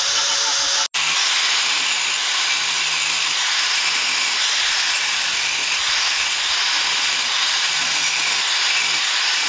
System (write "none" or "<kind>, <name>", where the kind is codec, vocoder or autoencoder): none